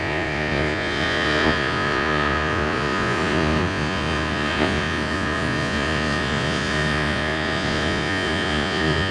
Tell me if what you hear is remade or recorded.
remade